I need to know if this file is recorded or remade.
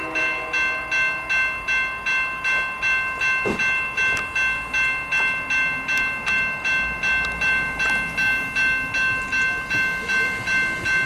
recorded